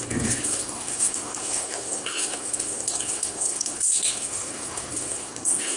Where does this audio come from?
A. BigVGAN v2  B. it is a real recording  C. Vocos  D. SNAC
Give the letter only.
D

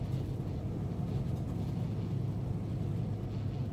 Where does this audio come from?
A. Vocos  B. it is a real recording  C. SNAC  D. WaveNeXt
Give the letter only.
B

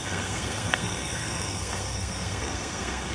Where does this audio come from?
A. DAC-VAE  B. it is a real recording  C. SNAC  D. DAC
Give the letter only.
C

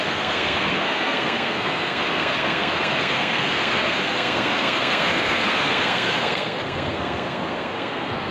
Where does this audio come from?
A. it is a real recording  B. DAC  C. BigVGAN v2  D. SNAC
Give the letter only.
D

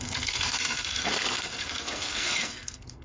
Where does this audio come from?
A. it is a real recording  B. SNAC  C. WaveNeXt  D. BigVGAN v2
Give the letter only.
B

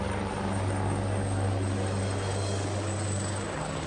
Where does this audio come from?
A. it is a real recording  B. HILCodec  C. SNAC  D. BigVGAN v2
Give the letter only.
A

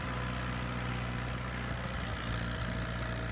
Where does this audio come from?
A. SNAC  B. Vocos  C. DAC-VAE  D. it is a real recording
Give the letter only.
D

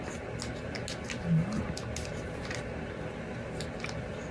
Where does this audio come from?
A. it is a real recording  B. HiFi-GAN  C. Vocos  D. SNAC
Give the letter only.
A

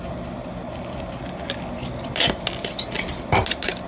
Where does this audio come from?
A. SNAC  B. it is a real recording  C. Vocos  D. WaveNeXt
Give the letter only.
B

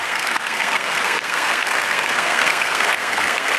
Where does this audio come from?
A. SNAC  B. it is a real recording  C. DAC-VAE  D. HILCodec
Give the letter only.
A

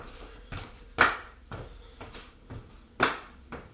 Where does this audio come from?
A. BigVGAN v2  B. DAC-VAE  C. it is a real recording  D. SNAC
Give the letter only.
C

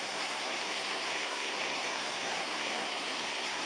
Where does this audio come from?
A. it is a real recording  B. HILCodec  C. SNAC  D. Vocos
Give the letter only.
C